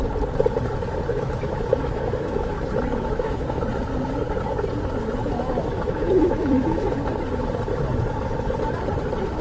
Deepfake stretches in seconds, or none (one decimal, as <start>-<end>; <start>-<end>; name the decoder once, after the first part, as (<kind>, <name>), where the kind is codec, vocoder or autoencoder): 1.1-2.5 (autoencoder, DAC-VAE); 2.9-3.6; 5.2-6.8